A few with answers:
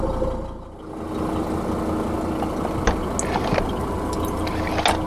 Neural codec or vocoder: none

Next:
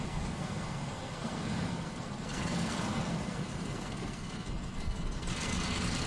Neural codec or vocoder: codec, SNAC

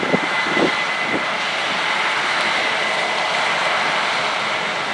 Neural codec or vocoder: none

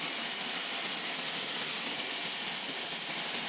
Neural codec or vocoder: none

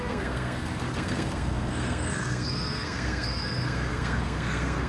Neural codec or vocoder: codec, SNAC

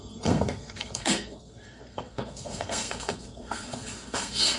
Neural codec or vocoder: codec, SNAC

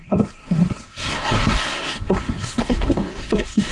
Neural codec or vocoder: codec, SNAC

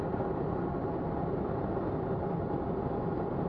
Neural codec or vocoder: none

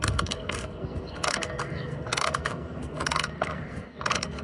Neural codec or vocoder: codec, SNAC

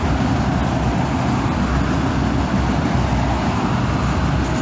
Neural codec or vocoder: none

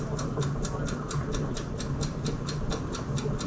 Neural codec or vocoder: none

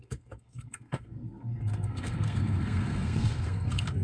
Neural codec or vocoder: codec, SNAC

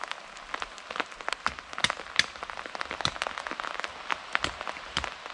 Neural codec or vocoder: none